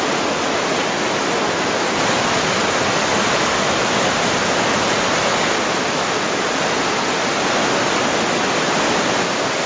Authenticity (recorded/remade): recorded